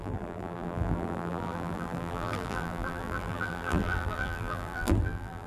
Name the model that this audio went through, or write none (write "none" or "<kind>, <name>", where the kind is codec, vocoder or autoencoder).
vocoder, BigVGAN v2